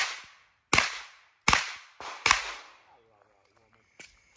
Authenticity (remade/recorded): recorded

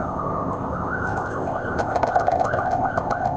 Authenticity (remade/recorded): remade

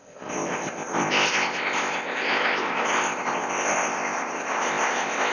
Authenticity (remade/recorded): remade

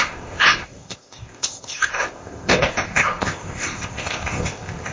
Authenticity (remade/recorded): remade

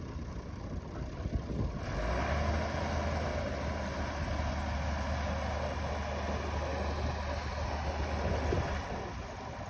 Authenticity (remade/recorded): recorded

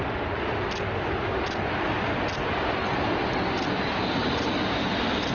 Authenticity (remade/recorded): recorded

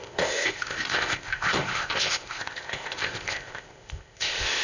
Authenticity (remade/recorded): remade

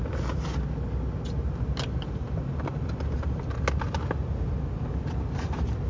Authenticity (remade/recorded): recorded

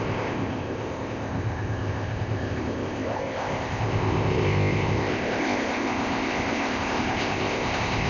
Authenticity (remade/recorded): remade